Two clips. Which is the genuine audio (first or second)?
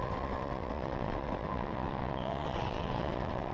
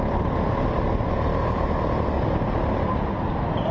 second